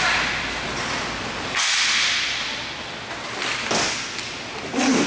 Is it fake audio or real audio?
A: real